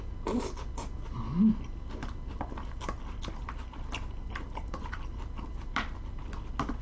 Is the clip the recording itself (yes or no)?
yes